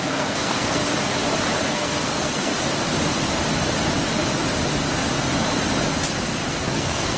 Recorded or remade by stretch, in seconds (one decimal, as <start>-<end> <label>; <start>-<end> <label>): 0.0-0.8 remade; 0.8-1.7 recorded; 1.7-2.5 remade; 2.5-6.5 recorded; 6.5-7.2 remade